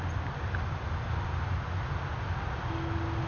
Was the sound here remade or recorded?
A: recorded